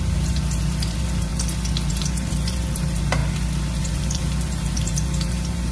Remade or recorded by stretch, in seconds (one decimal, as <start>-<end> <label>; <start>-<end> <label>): 0.0-1.3 remade; 1.3-1.9 recorded; 1.9-3.2 remade; 3.2-3.8 recorded; 3.8-5.7 remade